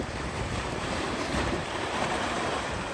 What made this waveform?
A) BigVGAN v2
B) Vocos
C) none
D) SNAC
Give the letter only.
A